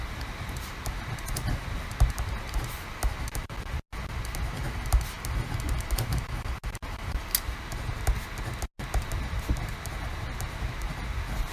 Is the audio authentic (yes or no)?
yes